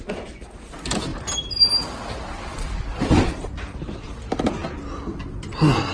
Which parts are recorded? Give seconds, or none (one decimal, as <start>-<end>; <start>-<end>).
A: 0.0-5.9